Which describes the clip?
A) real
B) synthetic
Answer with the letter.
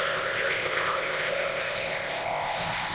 B